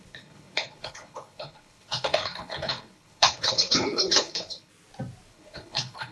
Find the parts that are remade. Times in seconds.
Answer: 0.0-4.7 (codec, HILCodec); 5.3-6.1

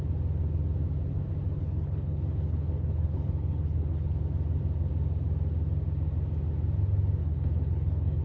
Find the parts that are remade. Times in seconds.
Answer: 1.6-4.2 (codec, HILCodec); 7.2-8.2